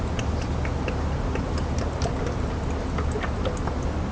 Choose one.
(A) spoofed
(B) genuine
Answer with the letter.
B